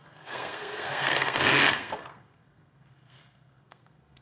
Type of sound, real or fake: fake